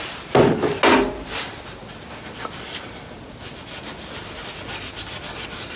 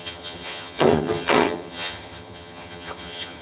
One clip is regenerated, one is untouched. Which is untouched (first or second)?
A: first